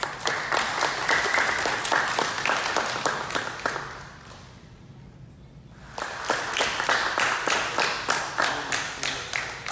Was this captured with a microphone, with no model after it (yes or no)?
yes